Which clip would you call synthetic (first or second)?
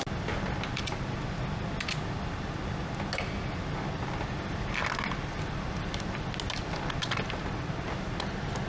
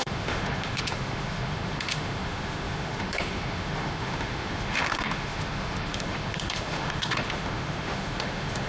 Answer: second